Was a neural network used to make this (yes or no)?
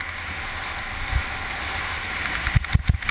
no